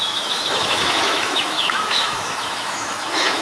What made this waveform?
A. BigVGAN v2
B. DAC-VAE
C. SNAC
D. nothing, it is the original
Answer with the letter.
B